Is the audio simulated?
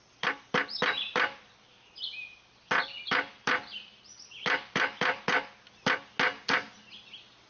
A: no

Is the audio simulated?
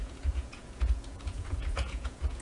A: yes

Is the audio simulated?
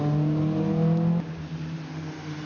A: no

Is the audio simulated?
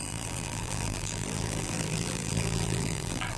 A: yes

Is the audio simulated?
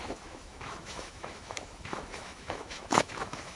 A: yes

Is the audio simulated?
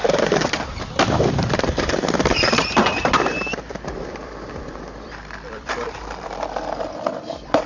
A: yes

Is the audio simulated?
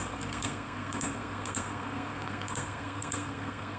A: yes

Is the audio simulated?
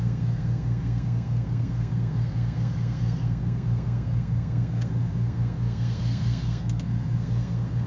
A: yes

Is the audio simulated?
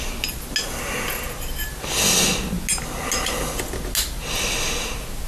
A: no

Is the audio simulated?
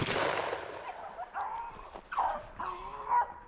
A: no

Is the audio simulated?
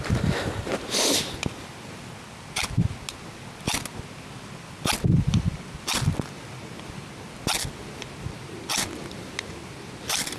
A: no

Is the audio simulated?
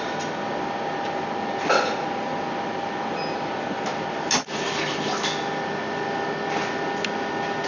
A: no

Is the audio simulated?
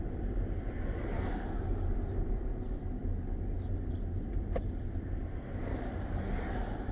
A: no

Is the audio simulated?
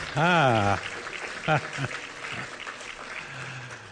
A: no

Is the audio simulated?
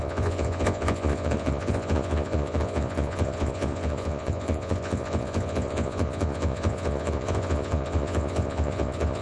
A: yes